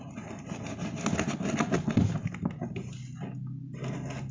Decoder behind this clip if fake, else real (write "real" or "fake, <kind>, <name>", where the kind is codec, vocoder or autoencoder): real